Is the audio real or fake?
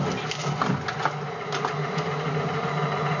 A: real